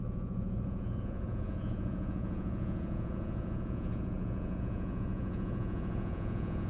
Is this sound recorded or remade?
remade